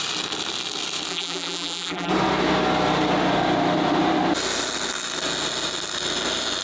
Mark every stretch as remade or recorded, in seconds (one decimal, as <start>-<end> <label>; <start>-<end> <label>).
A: 0.0-1.1 recorded; 1.1-2.1 remade; 2.1-6.6 recorded